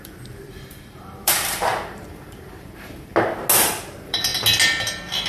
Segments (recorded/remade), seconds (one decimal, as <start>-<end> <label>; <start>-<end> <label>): 0.0-3.1 remade; 3.1-3.6 recorded; 3.6-4.3 remade; 4.3-5.3 recorded

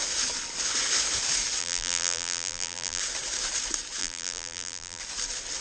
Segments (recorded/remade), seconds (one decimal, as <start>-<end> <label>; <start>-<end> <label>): 0.0-1.6 recorded; 1.6-3.0 remade; 3.0-4.0 recorded; 4.0-5.0 remade; 5.0-5.6 recorded